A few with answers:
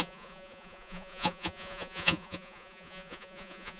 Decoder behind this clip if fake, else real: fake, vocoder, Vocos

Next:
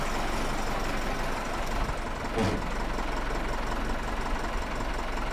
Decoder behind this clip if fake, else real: real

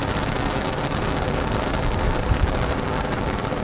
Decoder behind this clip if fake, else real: real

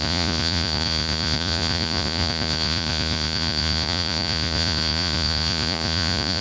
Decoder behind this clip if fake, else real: fake, vocoder, Vocos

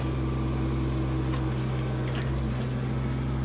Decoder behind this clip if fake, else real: real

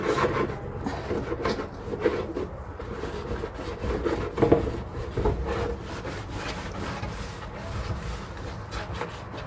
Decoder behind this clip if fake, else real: real